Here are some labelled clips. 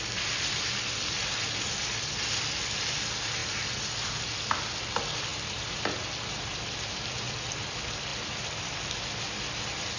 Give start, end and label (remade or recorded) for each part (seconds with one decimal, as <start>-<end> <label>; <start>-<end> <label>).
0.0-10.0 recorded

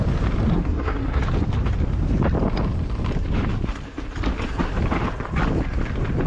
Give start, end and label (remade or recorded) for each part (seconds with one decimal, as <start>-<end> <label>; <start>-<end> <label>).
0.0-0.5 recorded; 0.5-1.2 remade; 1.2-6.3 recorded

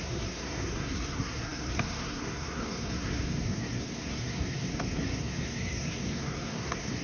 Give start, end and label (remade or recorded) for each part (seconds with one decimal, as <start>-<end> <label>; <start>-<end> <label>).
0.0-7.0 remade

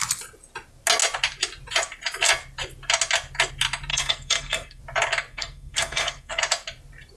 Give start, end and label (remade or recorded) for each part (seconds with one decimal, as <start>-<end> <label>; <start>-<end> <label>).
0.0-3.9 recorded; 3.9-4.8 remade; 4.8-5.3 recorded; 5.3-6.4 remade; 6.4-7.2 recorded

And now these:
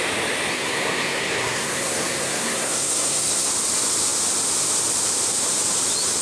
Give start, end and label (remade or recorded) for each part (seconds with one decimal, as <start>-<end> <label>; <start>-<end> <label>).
0.0-0.5 recorded; 0.5-3.5 remade; 3.5-6.2 recorded